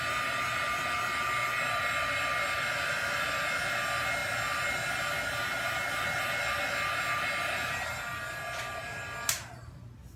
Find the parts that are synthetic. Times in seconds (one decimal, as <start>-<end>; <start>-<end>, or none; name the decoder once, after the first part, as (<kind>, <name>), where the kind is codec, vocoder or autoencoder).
none